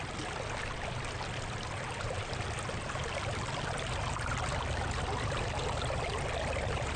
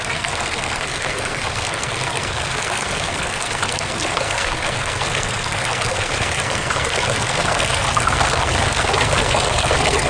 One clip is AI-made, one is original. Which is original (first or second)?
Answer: first